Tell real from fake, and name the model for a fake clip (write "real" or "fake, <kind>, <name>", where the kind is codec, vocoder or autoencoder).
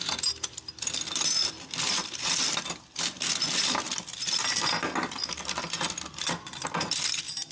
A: real